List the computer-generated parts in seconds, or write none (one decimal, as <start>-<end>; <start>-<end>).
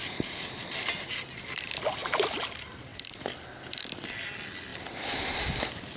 none